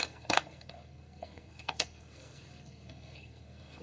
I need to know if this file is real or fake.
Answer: fake